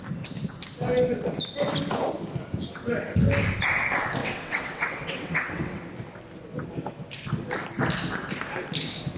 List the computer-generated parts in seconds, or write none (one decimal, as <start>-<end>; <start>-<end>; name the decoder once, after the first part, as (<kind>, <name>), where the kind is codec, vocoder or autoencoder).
4.2-5.8 (vocoder, WaveNeXt)

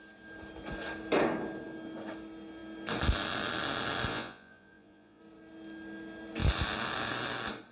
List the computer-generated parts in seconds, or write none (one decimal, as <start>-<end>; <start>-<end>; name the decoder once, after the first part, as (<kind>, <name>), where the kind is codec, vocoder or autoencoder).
4.1-5.2 (vocoder, Vocos)

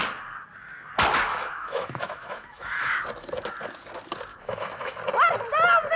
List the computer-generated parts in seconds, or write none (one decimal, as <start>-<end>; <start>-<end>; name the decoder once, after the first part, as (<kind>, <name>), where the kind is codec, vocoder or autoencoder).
1.3-2.9 (autoencoder, DAC-VAE); 4.3-5.0

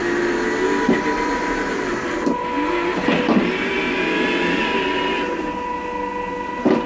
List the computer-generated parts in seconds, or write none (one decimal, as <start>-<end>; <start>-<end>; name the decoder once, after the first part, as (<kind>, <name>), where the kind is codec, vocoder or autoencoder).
none